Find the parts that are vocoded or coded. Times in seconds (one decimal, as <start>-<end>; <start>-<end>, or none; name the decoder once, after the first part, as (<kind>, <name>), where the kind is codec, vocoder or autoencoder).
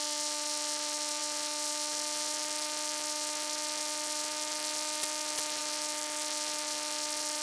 none